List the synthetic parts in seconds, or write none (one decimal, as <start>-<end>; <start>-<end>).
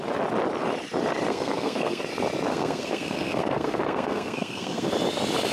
1.3-2.0; 2.5-4.9